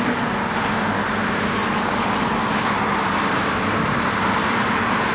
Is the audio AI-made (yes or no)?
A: no